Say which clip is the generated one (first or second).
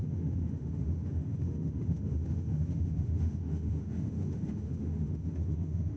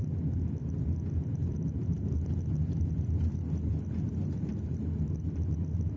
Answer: first